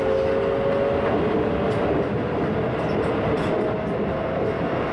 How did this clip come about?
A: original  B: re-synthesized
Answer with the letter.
A